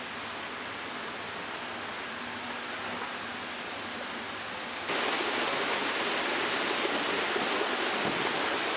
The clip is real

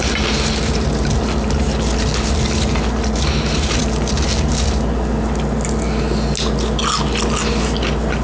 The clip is real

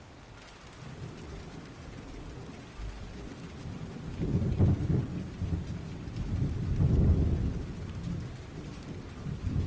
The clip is real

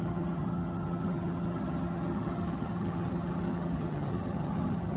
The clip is fake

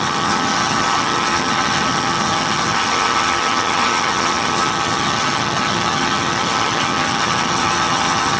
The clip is fake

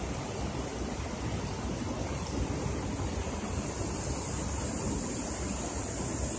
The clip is real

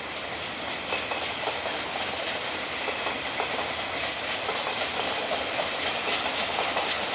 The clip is real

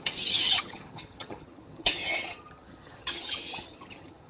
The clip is fake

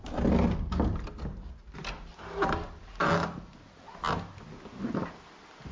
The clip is real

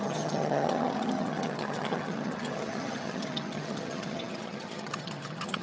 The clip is fake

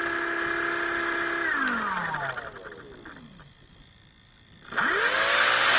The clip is real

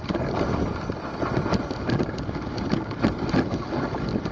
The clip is real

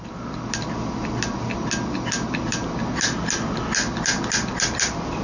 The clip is real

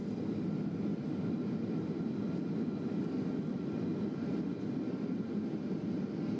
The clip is real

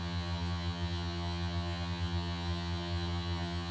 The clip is fake